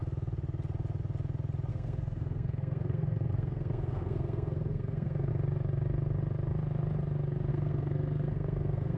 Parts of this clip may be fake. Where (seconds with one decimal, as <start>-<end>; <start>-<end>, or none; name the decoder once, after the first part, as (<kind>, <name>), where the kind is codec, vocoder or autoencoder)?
1.7-5.3 (codec, SNAC); 7.5-9.0

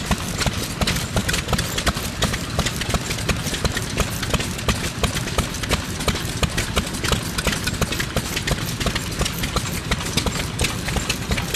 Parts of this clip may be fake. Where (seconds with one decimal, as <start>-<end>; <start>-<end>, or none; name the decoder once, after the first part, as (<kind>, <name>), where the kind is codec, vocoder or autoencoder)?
none

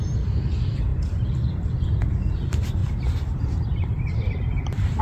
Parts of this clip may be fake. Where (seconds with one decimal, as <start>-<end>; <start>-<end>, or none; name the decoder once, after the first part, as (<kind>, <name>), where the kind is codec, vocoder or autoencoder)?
2.8-5.0 (vocoder, BigVGAN v2)

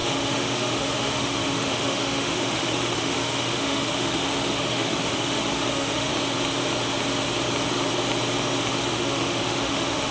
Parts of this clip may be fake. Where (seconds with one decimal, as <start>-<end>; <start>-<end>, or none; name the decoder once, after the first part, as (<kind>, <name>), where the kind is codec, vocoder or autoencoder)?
0.0-6.1 (autoencoder, DAC-VAE); 8.7-10.1